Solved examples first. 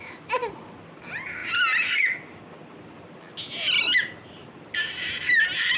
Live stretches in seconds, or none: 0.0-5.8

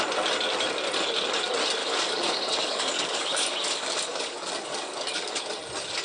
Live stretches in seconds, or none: 0.0-1.8; 5.4-6.0

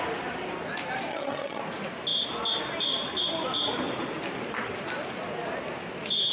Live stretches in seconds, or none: 0.0-1.1; 1.6-6.3

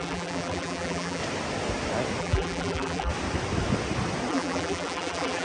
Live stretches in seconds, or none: 1.2-2.2; 3.1-4.3

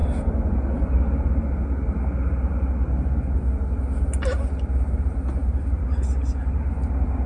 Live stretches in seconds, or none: 0.0-7.3

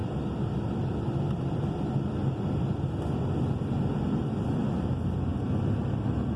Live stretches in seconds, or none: 3.7-6.4

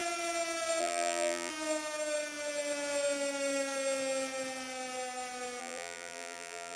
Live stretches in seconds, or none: 0.0-0.8; 1.5-5.6

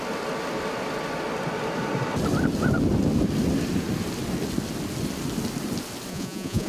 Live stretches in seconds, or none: 0.0-6.1